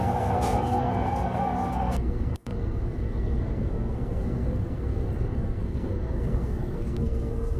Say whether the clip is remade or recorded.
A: remade